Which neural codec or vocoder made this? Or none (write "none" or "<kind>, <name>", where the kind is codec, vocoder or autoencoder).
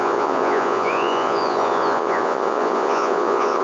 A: vocoder, Vocos